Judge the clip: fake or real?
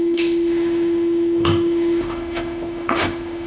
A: fake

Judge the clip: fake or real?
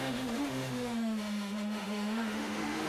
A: fake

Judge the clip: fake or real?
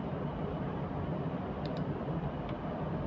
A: fake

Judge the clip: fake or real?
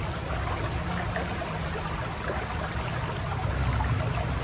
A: real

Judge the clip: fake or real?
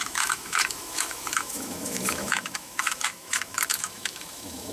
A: fake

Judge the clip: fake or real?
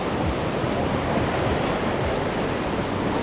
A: real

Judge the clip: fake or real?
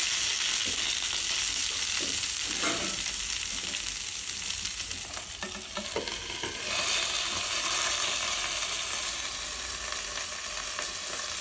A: real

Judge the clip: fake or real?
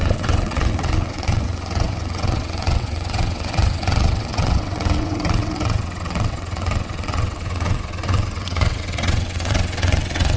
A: fake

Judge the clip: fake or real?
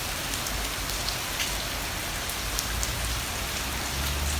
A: real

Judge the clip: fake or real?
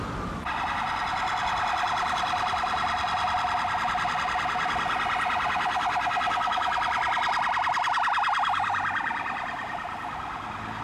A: real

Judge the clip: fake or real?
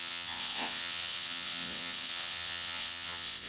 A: fake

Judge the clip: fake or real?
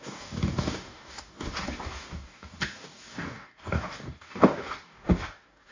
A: fake